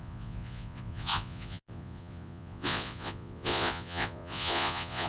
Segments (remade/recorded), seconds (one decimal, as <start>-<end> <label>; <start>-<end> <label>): 0.0-5.1 remade